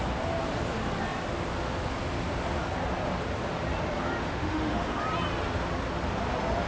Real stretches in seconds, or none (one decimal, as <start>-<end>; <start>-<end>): 0.0-4.2; 5.0-6.7